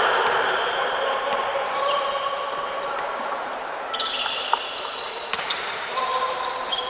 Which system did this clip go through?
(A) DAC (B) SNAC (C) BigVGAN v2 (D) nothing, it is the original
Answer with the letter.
C